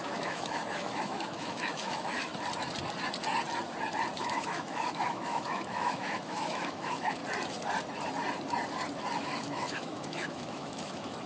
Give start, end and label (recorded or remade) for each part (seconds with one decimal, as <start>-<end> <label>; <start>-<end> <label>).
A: 0.0-2.3 remade; 2.3-4.2 recorded; 4.2-7.2 remade; 7.2-9.2 recorded; 9.2-11.3 remade